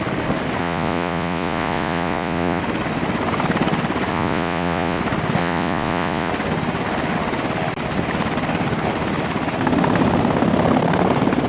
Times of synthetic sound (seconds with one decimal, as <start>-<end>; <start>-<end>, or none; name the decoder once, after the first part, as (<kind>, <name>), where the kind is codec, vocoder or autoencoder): 0.6-2.6 (vocoder, Vocos); 4.1-5.0; 5.4-6.3